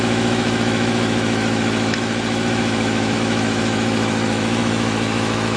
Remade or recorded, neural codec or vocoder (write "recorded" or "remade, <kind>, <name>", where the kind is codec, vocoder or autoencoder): remade, autoencoder, DAC-VAE